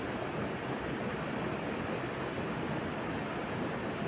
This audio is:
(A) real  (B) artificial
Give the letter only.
A